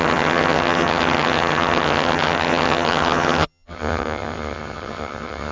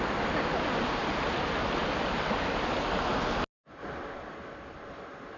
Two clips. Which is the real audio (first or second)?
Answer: second